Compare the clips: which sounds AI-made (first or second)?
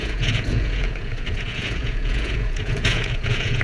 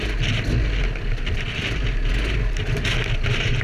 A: first